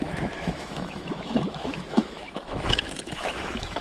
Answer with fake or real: fake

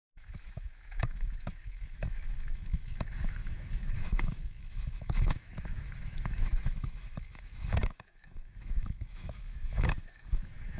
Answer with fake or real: fake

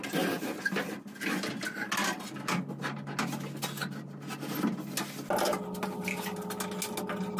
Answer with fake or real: real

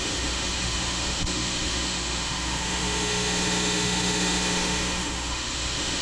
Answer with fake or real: fake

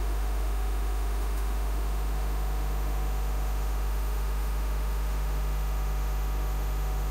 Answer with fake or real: fake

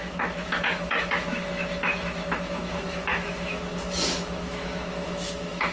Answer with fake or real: fake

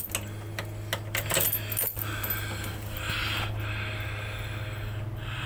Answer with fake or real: real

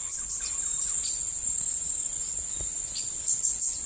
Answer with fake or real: real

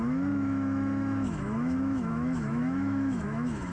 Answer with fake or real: fake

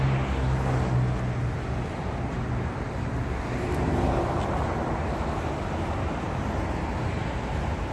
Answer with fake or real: real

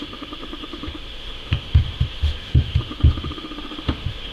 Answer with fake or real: fake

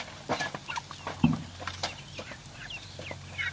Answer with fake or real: real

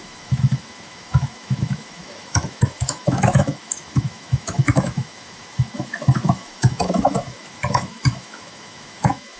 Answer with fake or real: fake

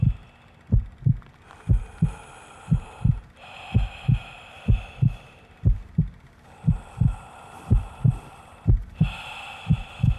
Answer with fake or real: real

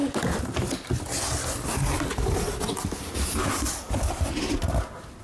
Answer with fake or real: real